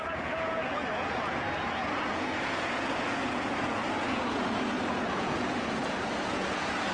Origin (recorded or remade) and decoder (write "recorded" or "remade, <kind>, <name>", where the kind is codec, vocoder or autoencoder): remade, vocoder, Vocos